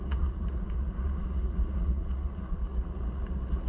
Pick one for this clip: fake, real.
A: fake